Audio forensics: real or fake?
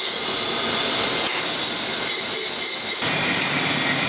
real